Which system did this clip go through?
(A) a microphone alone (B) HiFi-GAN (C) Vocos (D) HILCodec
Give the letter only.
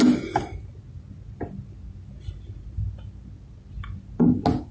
A